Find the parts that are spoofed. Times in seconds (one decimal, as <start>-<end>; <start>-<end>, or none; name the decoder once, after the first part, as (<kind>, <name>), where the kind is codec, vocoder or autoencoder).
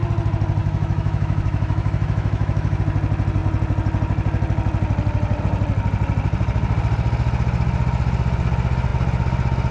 0.6-2.8 (autoencoder, DAC-VAE)